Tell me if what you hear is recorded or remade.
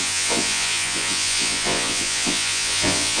remade